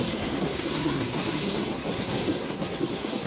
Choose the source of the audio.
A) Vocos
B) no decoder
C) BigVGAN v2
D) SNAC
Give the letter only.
D